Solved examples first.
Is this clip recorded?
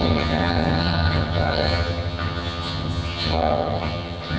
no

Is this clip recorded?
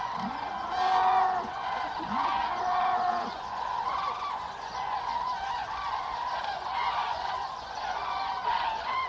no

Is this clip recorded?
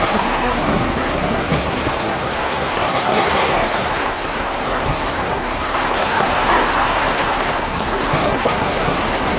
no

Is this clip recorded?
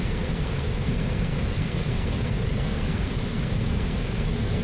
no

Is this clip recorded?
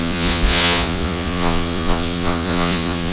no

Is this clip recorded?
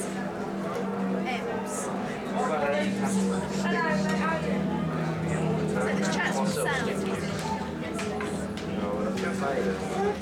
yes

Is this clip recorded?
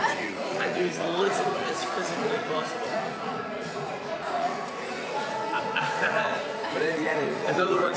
no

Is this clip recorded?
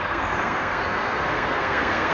no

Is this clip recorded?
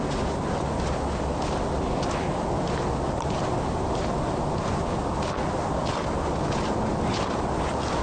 yes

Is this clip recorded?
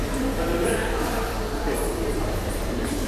no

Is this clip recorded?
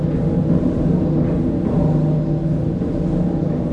yes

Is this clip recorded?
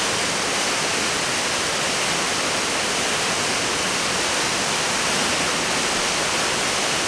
yes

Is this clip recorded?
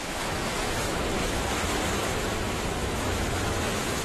no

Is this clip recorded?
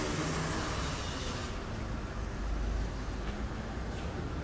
yes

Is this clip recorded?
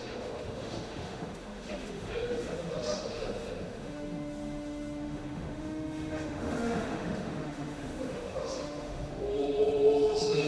no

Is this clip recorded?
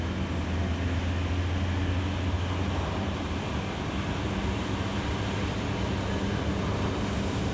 yes